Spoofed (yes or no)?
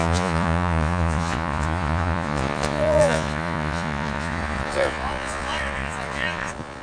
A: yes